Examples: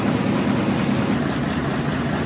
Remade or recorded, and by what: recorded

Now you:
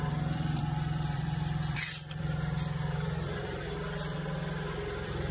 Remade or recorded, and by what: remade, vocoder, BigVGAN v2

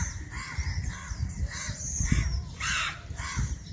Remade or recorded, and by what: remade, vocoder, BigVGAN v2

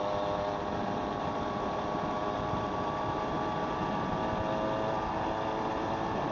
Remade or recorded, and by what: recorded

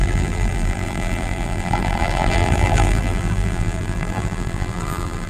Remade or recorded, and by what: remade, vocoder, BigVGAN v2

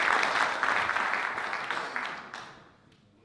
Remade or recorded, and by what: recorded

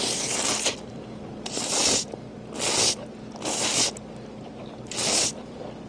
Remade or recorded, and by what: remade, vocoder, BigVGAN v2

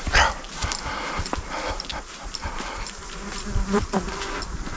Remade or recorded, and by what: recorded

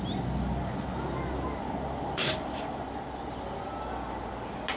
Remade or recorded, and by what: recorded